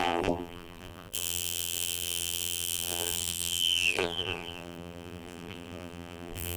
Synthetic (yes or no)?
yes